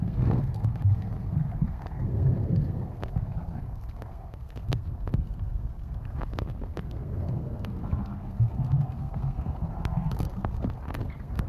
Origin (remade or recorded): remade